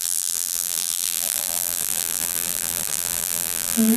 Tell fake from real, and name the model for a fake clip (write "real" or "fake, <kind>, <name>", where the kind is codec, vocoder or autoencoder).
fake, vocoder, BigVGAN v2